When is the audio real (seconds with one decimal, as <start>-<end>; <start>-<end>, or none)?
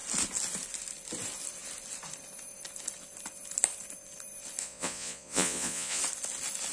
0.0-4.6; 6.0-6.7